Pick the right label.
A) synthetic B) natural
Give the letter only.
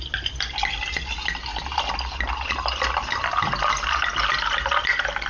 B